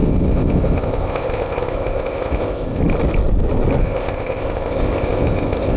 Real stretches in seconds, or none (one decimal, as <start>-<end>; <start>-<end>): 2.8-3.8